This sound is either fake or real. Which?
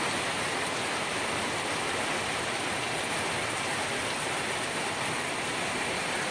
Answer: real